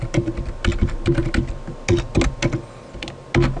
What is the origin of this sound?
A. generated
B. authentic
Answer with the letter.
B